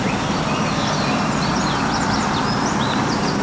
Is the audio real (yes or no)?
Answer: no